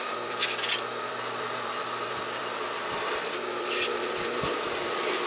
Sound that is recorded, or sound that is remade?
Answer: remade